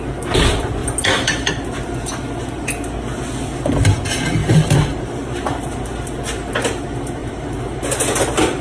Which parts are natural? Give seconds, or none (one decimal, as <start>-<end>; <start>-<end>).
0.0-4.4; 5.7-7.2; 7.8-8.6